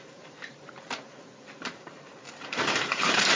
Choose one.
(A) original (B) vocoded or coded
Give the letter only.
B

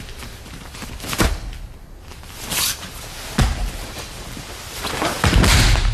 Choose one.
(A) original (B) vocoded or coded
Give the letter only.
A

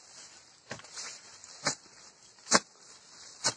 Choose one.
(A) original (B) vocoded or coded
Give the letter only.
A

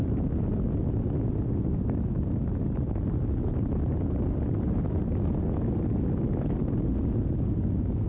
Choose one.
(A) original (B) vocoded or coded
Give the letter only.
A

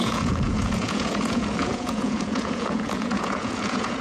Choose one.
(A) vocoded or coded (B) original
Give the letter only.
A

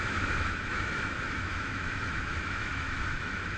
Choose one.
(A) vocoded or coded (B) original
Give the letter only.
A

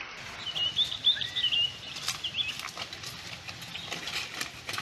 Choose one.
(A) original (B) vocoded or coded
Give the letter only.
A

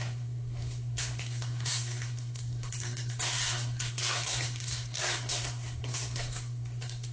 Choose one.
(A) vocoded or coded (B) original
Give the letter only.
A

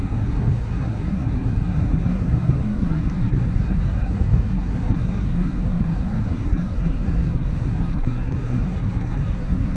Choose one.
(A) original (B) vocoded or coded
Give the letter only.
B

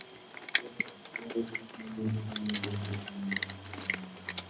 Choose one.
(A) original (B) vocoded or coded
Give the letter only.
A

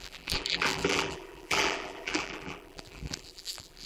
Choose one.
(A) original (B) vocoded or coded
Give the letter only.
B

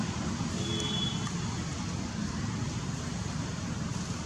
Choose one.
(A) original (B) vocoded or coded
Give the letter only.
A